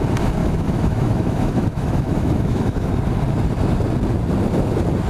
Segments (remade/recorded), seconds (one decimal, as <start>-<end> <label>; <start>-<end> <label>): 0.0-0.4 recorded; 0.4-2.9 remade; 2.9-5.1 recorded

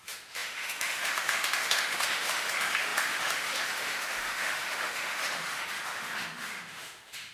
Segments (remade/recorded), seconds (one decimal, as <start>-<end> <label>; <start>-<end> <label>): 0.0-7.3 remade

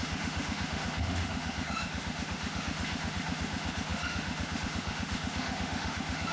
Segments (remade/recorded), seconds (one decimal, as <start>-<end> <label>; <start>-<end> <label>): 0.0-6.3 remade

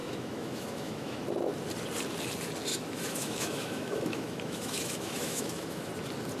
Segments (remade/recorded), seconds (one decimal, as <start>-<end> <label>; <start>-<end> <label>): 0.0-1.2 remade; 1.2-2.7 recorded; 2.7-5.9 remade; 5.9-6.4 recorded

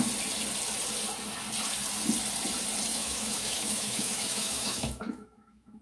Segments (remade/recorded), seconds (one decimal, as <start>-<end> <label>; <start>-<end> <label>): 0.0-2.9 recorded; 2.9-5.8 remade

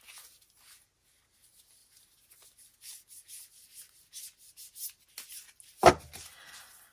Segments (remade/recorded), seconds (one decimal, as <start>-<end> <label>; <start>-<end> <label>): 0.0-6.9 recorded